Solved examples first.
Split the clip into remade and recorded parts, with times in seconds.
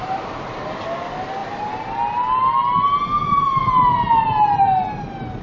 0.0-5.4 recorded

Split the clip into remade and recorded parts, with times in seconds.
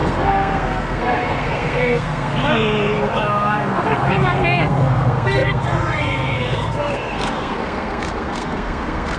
0.0-9.2 remade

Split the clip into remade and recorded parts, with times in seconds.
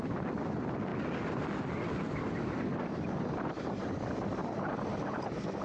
0.0-0.9 remade; 0.9-3.2 recorded; 3.2-4.4 remade; 4.4-5.0 recorded; 5.0-5.6 remade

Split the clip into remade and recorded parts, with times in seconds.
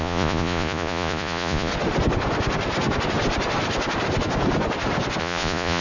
0.0-1.7 remade; 1.7-5.2 recorded; 5.2-5.8 remade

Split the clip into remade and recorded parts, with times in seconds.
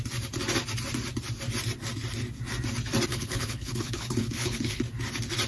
0.0-3.1 recorded; 3.1-4.8 remade; 4.8-5.5 recorded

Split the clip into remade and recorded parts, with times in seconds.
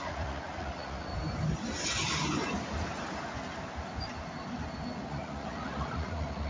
0.0-1.1 remade; 1.1-5.0 recorded; 5.0-6.5 remade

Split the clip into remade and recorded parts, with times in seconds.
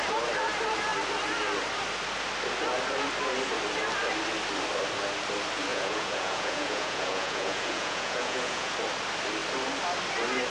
0.0-5.7 recorded; 5.7-8.7 remade; 8.7-10.5 recorded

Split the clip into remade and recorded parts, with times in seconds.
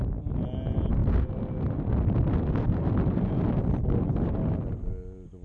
0.0-5.4 recorded